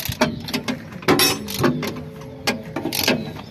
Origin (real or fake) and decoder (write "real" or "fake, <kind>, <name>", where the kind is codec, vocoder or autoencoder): real